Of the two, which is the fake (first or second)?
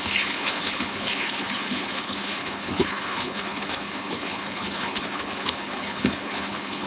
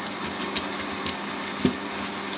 first